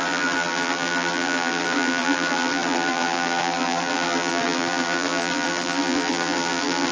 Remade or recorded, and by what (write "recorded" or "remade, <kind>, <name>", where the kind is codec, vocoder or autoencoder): remade, vocoder, BigVGAN v2